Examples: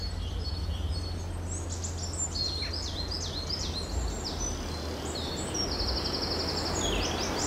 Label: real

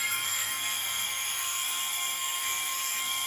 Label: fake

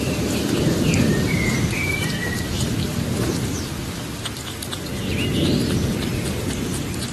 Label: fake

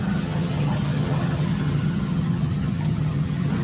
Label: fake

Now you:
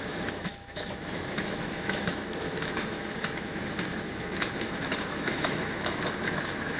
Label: fake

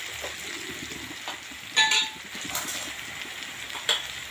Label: real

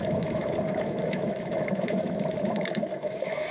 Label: fake